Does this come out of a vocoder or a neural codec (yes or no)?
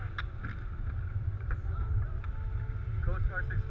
no